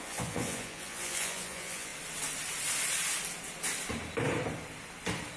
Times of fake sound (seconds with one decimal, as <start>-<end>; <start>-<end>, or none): 0.0-1.9